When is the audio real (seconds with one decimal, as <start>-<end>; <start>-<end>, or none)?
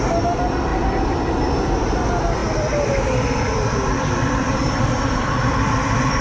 0.0-2.4